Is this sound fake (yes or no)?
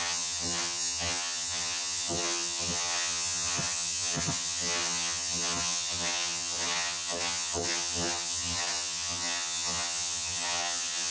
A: yes